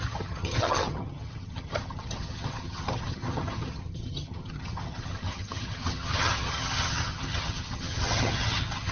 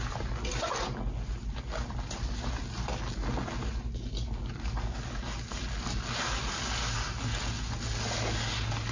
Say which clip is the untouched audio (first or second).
second